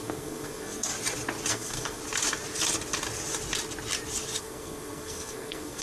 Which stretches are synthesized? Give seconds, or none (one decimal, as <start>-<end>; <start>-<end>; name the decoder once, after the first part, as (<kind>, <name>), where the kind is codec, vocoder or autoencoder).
0.0-0.9 (codec, SNAC); 1.5-2.0; 4.4-5.8